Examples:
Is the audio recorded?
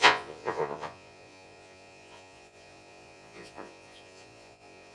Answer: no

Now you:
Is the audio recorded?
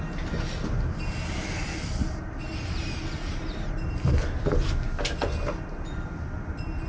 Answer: yes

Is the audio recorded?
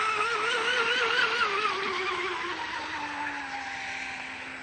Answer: yes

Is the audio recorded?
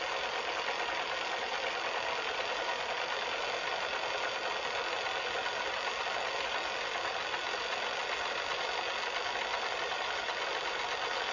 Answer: yes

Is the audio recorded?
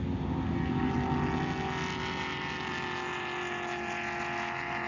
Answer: yes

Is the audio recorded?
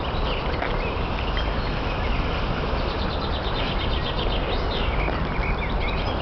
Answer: yes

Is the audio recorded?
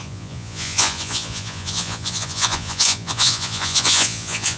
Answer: no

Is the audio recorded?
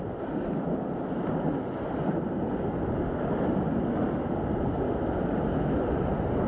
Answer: yes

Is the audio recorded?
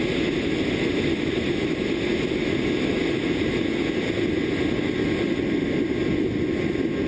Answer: yes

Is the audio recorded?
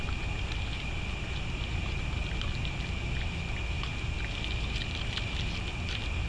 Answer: yes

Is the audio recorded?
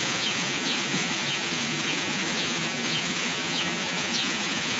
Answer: no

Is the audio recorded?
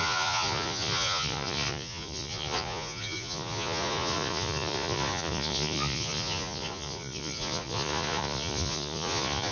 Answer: no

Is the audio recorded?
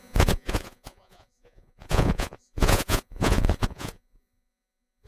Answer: no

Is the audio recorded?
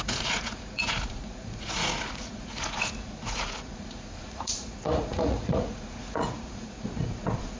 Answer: no